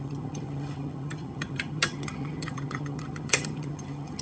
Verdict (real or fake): fake